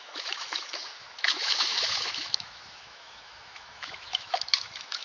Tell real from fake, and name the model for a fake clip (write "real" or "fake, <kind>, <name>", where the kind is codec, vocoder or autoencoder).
fake, autoencoder, DAC-VAE